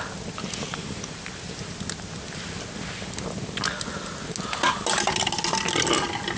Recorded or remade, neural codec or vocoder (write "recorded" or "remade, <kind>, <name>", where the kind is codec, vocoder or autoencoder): recorded